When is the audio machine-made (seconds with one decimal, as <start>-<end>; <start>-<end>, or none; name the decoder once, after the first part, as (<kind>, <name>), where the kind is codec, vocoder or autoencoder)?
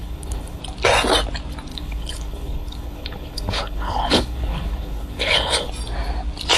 0.0-0.6 (codec, HILCodec); 1.7-5.7